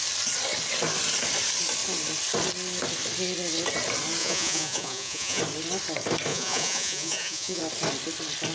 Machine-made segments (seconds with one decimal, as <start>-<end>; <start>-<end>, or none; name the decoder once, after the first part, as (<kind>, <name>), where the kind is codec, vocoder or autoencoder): 4.2-5.4 (vocoder, Vocos); 6.3-7.6